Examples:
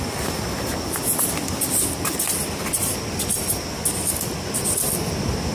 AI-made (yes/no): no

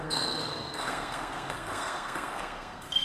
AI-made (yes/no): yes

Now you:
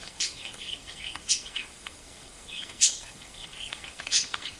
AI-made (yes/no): yes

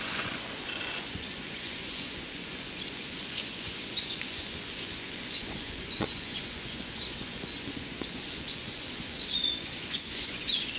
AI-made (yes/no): yes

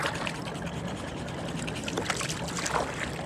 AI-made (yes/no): no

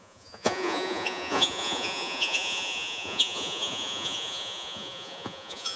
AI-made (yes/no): yes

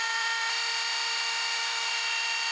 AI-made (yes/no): yes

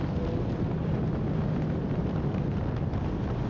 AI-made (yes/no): no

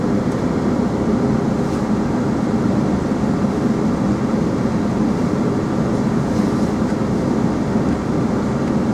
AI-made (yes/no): no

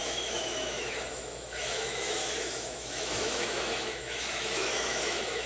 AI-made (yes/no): yes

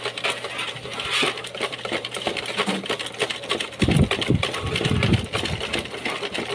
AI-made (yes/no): no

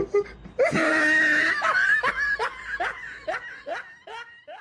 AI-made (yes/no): no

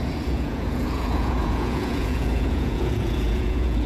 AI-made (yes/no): yes